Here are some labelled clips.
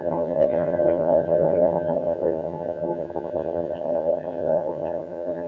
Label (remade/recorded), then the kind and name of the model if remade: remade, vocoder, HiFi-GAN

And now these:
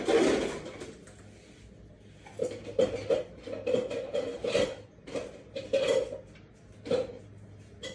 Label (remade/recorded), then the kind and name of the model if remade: recorded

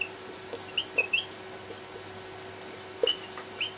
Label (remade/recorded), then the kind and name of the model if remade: recorded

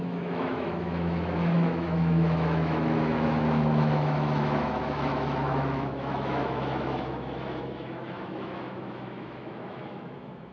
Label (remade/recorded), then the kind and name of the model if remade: remade, autoencoder, DAC-VAE